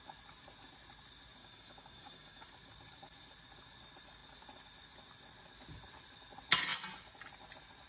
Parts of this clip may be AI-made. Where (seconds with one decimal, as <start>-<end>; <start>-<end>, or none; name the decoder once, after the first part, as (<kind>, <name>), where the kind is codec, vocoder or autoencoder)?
1.4-2.5 (codec, DAC)